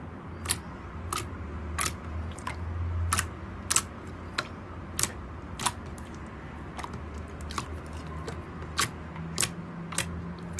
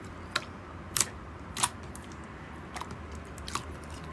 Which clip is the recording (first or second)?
first